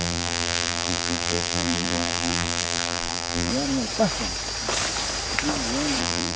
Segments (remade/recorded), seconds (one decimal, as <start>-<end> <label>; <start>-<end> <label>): 0.0-3.5 remade; 3.5-6.0 recorded; 6.0-6.4 remade